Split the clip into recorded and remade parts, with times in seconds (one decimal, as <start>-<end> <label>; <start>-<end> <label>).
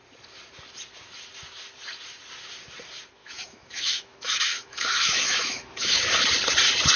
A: 0.0-3.2 recorded; 3.2-6.0 remade; 6.0-7.0 recorded